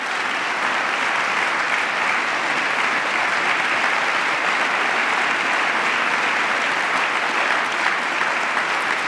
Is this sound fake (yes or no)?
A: no